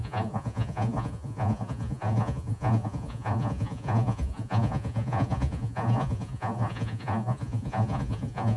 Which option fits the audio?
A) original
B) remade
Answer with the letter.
B